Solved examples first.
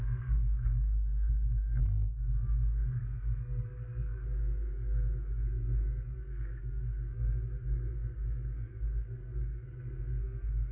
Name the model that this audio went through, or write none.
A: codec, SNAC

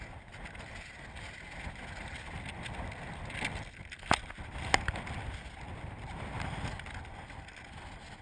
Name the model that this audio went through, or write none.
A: none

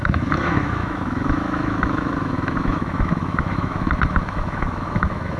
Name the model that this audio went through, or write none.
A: autoencoder, DAC-VAE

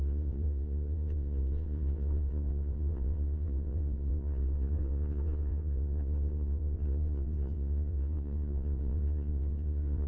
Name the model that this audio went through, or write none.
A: vocoder, WaveNeXt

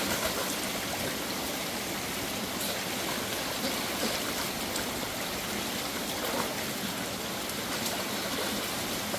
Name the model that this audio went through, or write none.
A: none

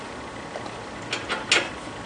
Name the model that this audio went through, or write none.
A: none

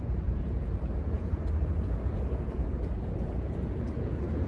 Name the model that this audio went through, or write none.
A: vocoder, Vocos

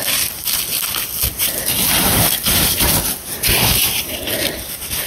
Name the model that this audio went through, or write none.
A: none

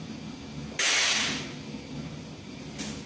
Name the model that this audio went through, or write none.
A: none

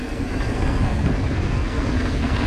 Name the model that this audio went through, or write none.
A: codec, SNAC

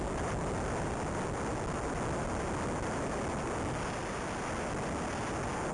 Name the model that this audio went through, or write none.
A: none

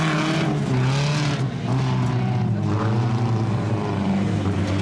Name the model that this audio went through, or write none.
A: none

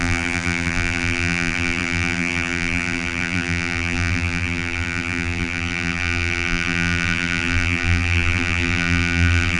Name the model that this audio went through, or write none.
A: vocoder, BigVGAN v2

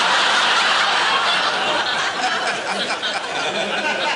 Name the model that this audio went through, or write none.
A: none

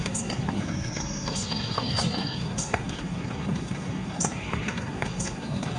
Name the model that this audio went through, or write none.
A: codec, SNAC